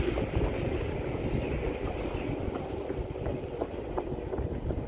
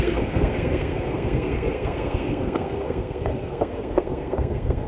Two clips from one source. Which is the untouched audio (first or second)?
first